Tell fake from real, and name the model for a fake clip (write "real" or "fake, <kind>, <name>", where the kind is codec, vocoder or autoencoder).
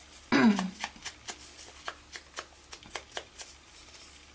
real